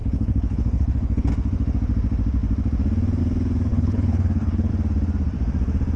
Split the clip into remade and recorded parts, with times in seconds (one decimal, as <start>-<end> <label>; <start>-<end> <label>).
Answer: 0.0-1.3 remade; 1.3-3.7 recorded; 3.7-4.7 remade; 4.7-6.0 recorded